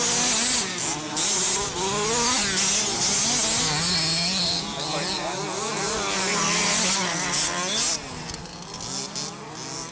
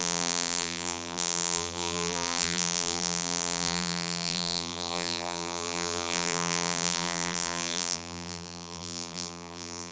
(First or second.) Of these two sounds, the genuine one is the first